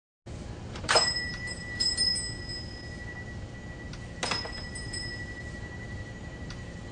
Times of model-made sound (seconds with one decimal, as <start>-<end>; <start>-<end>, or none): 0.8-2.1; 4.5-6.9